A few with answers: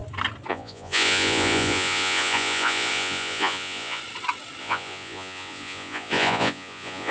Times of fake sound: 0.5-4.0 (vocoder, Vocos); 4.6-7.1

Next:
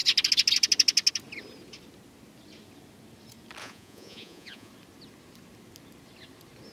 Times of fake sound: 3.6-4.7 (vocoder, Vocos)